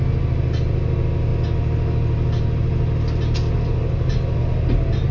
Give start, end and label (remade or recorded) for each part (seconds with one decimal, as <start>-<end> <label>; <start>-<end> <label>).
0.0-5.1 recorded